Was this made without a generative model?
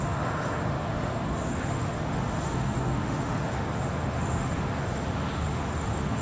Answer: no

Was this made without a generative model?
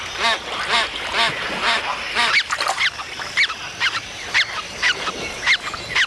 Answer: yes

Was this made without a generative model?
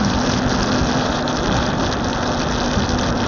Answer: yes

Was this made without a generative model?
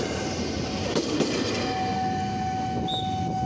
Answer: yes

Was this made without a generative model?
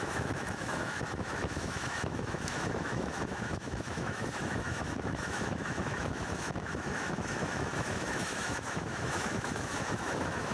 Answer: no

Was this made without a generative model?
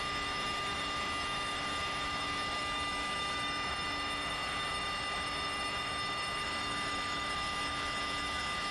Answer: no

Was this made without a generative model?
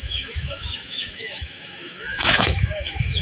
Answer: no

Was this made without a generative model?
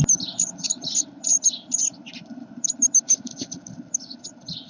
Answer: yes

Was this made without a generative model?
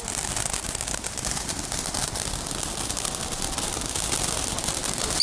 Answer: yes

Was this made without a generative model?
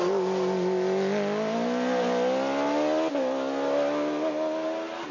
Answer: yes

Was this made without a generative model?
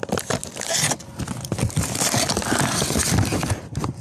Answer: yes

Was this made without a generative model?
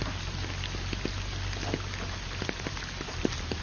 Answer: yes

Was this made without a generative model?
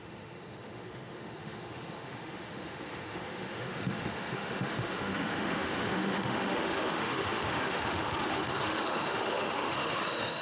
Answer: no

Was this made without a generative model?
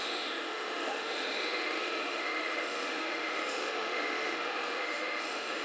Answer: no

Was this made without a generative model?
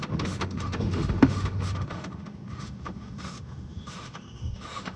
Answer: no